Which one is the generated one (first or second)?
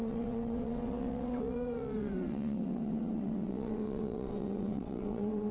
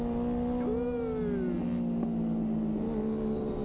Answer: first